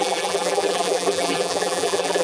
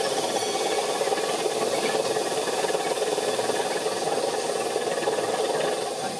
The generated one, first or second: first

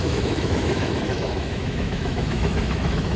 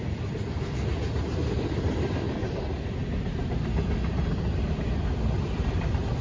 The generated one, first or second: first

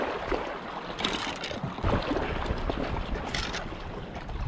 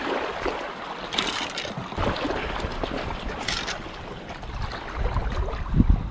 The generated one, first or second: first